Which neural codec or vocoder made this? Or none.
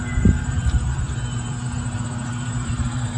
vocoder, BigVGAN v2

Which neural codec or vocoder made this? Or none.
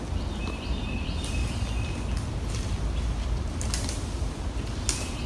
none